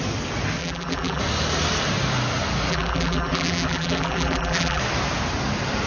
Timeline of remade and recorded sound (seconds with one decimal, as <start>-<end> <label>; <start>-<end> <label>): 0.0-0.6 recorded; 0.6-1.2 remade; 1.2-2.7 recorded; 2.7-4.8 remade; 4.8-5.9 recorded